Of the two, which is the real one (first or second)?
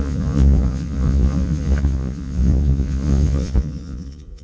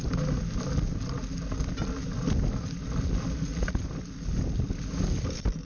second